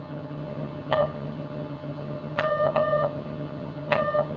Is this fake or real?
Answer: fake